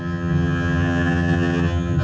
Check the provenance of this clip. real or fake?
fake